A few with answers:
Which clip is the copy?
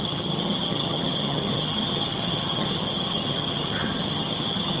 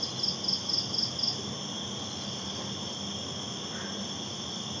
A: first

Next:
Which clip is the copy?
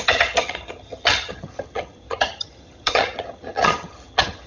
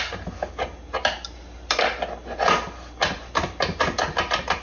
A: first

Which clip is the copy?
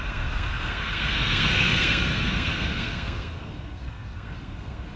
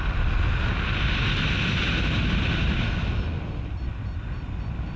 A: first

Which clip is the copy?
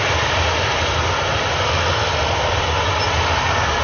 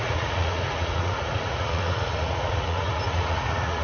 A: second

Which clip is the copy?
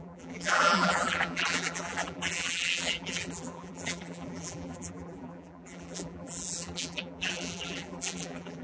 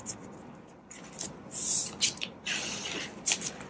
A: first